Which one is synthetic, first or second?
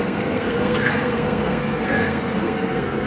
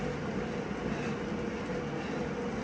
first